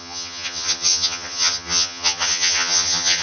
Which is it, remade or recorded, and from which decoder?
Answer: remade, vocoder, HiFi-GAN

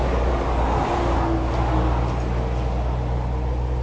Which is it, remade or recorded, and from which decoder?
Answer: recorded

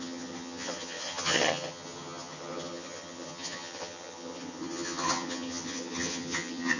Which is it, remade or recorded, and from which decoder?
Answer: remade, vocoder, HiFi-GAN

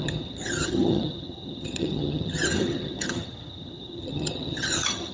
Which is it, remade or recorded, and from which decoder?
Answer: remade, vocoder, HiFi-GAN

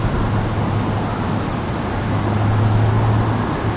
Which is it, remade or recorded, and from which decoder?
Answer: recorded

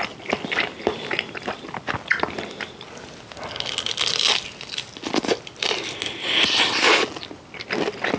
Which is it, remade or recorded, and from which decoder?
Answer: recorded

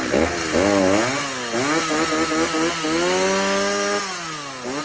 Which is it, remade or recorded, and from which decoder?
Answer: recorded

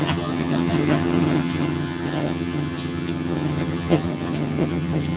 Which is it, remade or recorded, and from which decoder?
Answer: remade, vocoder, HiFi-GAN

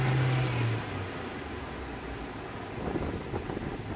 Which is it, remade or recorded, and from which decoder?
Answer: recorded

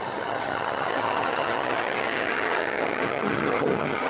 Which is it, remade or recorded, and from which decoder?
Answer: remade, vocoder, HiFi-GAN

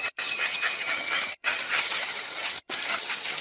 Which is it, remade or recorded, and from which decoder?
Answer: remade, vocoder, HiFi-GAN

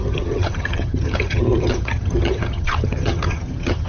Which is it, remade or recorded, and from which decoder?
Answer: remade, vocoder, HiFi-GAN